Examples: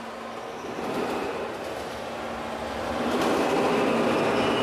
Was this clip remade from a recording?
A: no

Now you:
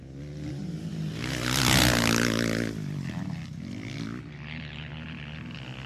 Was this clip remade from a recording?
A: no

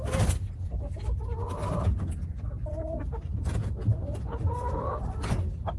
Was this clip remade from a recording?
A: no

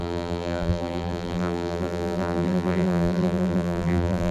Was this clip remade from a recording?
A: yes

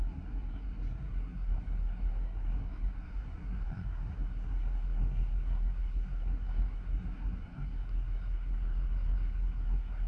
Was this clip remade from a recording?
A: yes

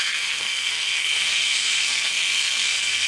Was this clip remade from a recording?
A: yes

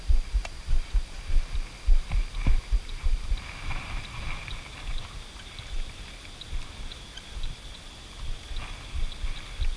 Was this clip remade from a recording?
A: yes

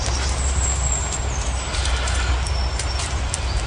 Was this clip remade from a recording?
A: no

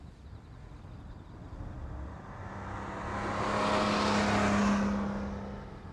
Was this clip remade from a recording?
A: no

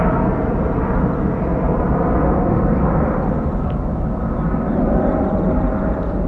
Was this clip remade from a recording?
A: no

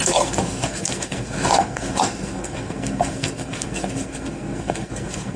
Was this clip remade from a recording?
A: yes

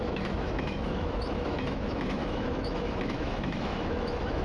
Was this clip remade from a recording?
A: yes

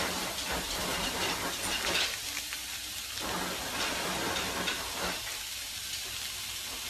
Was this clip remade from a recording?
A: no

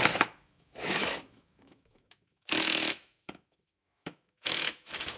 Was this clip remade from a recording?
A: yes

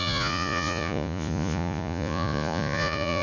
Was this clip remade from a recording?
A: yes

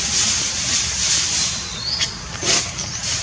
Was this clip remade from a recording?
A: no